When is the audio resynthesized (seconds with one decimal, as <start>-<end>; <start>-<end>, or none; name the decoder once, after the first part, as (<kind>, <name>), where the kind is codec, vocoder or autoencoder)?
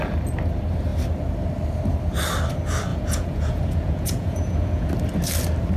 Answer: 2.9-4.9 (vocoder, Vocos)